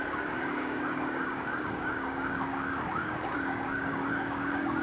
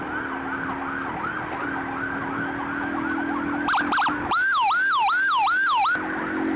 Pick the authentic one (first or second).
second